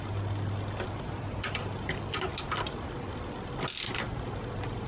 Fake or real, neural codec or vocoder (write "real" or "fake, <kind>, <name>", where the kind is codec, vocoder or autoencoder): real